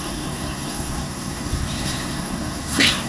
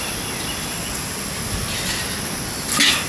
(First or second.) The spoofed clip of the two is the first